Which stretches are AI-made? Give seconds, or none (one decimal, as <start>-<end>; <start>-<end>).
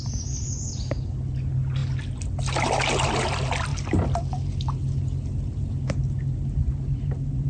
none